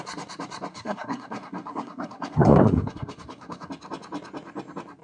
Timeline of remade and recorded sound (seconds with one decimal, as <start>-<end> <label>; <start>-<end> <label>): 0.0-0.7 recorded; 0.7-3.7 remade; 3.7-5.0 recorded